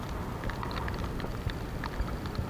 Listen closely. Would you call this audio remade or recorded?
recorded